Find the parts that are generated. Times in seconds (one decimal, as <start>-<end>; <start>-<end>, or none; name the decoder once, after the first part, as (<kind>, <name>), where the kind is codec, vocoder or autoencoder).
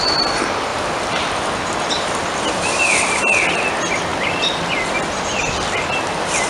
0.7-2.8 (vocoder, BigVGAN v2)